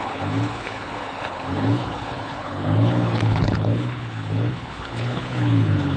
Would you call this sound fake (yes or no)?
yes